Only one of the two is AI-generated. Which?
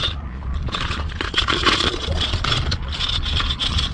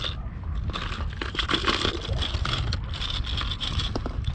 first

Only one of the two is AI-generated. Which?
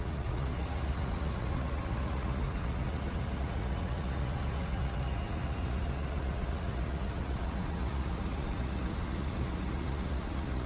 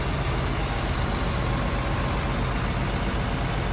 first